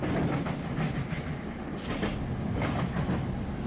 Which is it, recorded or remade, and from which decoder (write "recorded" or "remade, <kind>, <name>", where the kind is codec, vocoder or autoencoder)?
recorded